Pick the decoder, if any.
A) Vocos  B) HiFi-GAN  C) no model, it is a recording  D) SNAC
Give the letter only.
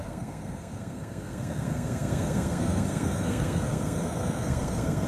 D